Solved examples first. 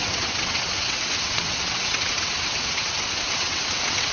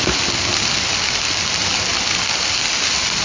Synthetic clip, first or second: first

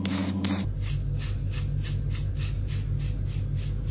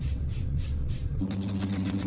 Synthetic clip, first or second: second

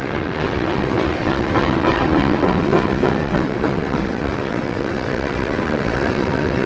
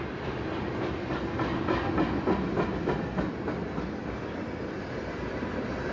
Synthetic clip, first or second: first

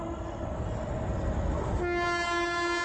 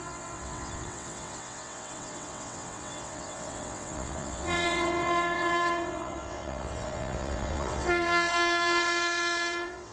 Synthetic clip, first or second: second